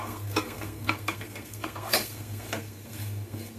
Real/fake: fake